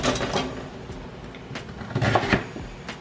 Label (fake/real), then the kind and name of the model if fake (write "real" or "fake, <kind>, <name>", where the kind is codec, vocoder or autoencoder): real